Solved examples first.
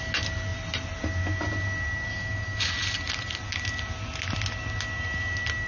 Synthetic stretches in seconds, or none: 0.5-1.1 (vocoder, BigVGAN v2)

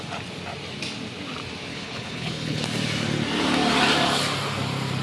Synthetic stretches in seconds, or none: 1.7-2.6 (codec, HILCodec)

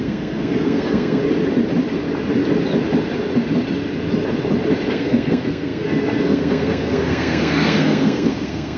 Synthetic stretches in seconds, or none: 0.0-1.2 (codec, SNAC); 4.9-8.8

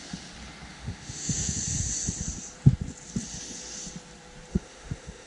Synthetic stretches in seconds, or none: 0.7-1.6 (autoencoder, DAC-VAE); 4.5-5.3

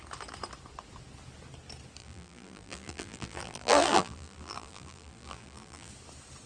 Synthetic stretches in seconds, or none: 2.0-5.9 (vocoder, BigVGAN v2)

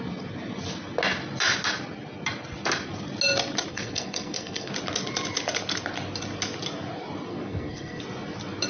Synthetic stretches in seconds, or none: 3.7-4.7 (codec, SNAC); 7.3-8.0

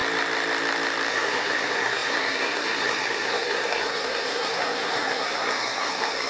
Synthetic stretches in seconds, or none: 1.1-6.3 (codec, SNAC)